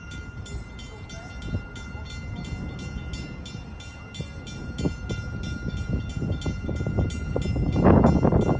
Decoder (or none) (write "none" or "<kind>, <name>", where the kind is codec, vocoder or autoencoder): none